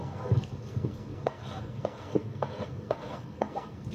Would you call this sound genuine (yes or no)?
no